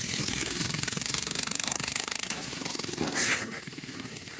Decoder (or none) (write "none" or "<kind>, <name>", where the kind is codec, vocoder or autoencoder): codec, SNAC